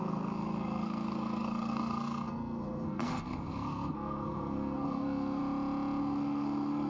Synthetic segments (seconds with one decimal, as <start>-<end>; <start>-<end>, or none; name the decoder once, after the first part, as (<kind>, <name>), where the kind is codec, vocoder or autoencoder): 0.0-5.4 (codec, SNAC); 6.0-6.9